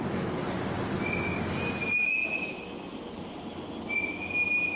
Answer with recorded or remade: recorded